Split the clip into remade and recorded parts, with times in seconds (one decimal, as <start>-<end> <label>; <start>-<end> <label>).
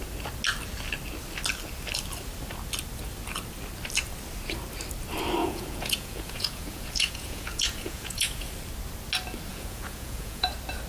0.0-5.4 recorded; 5.4-8.5 remade; 8.5-9.5 recorded; 9.5-10.5 remade; 10.5-10.9 recorded